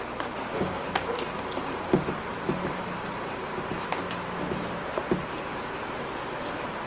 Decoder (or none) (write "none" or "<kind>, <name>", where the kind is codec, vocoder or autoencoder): none